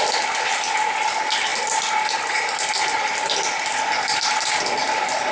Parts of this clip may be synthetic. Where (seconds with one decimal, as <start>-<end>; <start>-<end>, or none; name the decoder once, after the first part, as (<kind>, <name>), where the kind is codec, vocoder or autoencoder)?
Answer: none

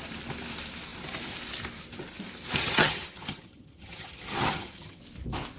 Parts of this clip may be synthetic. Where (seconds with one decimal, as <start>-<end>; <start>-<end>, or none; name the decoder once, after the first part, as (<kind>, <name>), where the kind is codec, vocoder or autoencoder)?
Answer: 2.6-5.0 (vocoder, HiFi-GAN)

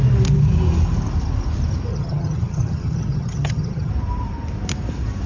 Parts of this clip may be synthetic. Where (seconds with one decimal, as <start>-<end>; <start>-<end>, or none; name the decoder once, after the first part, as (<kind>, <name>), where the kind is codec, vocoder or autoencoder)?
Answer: 1.9-3.9 (vocoder, HiFi-GAN)

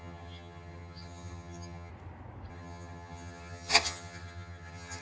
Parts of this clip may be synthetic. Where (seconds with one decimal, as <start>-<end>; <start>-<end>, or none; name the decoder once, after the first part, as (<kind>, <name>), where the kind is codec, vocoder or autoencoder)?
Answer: 0.0-1.9 (vocoder, HiFi-GAN); 2.5-5.0

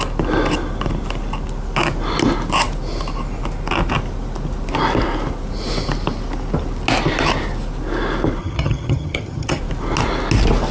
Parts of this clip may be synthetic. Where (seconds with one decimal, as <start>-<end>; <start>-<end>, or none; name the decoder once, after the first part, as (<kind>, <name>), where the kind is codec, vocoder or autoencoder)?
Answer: 8.4-9.6 (vocoder, HiFi-GAN)

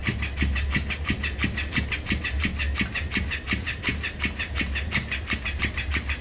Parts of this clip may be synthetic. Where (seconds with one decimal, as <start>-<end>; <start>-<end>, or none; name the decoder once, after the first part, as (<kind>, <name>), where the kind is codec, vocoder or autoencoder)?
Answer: none